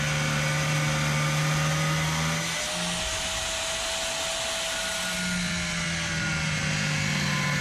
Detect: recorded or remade recorded